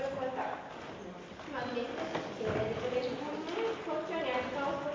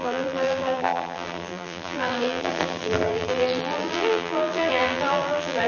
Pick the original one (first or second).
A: first